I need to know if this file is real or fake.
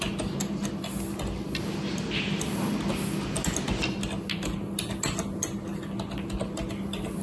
real